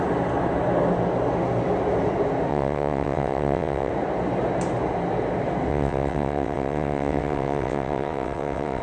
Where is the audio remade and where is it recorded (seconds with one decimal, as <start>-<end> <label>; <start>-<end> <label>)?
0.0-2.5 recorded; 2.5-3.9 remade; 3.9-5.7 recorded; 5.7-8.8 remade